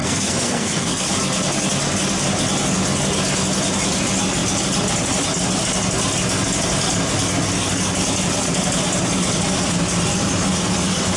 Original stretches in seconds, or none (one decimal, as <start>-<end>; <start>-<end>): 1.1-11.2